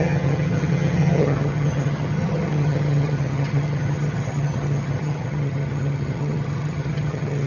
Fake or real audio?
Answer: fake